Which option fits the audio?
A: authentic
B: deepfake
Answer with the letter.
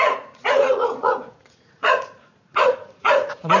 B